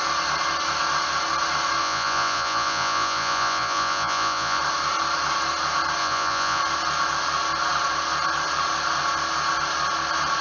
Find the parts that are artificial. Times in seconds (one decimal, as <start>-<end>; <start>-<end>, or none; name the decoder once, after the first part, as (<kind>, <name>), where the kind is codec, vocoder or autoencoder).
1.8-4.6 (vocoder, Vocos); 6.0-6.6